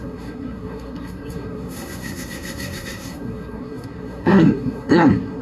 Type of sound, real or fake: fake